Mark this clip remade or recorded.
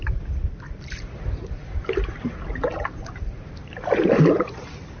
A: recorded